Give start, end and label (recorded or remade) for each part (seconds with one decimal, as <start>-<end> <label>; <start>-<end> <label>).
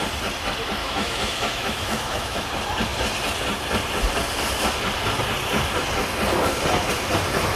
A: 0.0-0.8 recorded; 0.8-2.5 remade; 2.5-7.6 recorded